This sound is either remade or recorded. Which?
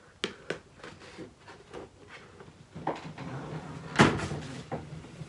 recorded